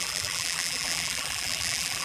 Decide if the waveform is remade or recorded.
remade